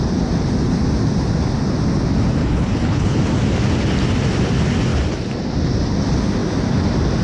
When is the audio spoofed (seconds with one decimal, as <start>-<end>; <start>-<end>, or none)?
2.4-3.2